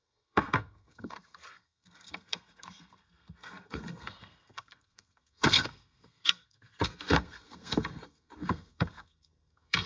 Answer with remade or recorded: remade